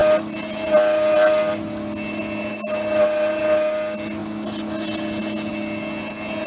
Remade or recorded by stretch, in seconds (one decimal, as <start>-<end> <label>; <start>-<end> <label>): 0.0-6.5 recorded